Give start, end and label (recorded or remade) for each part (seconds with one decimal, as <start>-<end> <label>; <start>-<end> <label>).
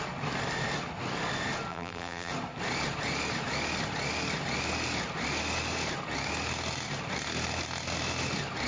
0.0-1.7 recorded; 1.7-2.3 remade; 2.3-8.7 recorded